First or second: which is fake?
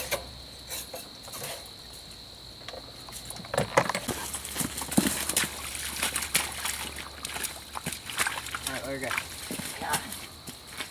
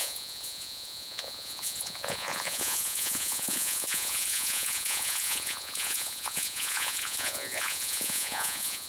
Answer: second